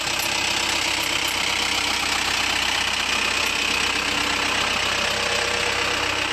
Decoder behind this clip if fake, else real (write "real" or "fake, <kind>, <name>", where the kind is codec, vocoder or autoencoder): real